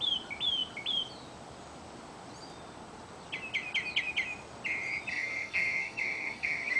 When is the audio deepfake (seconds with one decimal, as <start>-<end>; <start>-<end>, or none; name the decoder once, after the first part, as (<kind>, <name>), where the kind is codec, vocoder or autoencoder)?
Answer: 5.1-6.8 (codec, SNAC)